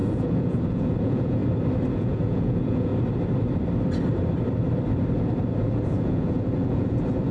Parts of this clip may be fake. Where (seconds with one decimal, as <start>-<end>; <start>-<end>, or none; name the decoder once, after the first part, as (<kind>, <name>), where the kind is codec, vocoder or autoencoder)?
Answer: 0.0-1.4 (vocoder, Vocos); 1.9-2.9; 5.6-7.3